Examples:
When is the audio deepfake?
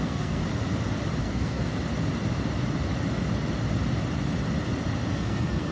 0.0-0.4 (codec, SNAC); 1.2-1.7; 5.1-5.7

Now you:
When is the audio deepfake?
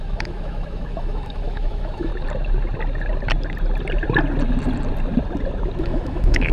0.0-2.1 (autoencoder, DAC-VAE); 5.8-6.5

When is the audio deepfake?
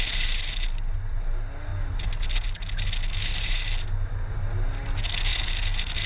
none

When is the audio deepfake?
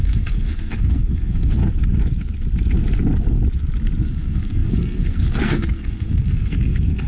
0.0-1.6 (codec, SNAC); 4.0-7.1